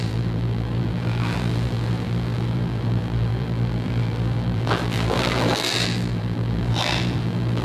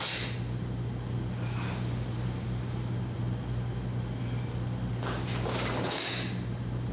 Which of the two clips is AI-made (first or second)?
first